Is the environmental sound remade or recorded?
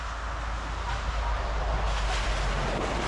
recorded